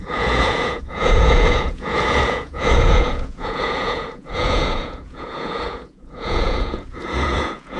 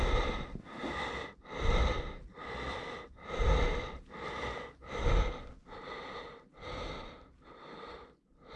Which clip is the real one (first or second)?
second